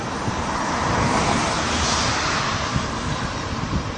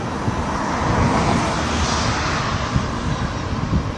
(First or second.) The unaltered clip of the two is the second